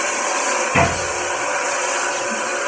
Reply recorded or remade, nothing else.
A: recorded